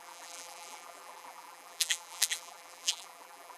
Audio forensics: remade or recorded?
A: remade